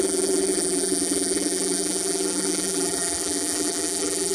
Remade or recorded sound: remade